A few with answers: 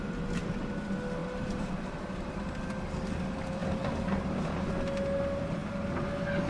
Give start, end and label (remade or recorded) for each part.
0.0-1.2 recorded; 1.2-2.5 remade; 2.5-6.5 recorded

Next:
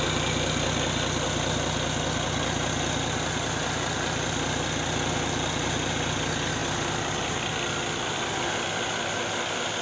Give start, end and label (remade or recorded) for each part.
0.0-9.8 recorded